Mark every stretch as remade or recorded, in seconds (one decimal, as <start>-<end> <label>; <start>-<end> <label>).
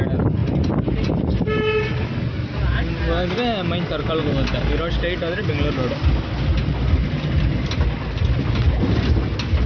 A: 0.0-9.7 recorded